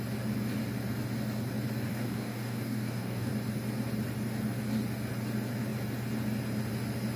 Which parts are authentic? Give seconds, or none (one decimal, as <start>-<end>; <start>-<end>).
0.0-1.9; 3.3-7.2